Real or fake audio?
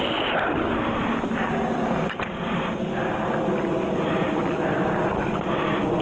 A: real